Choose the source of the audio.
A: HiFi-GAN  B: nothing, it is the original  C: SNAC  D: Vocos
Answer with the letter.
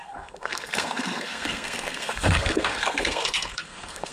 C